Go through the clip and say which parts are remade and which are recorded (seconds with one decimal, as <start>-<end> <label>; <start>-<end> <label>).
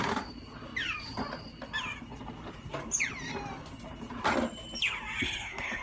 0.0-5.2 recorded; 5.2-5.8 remade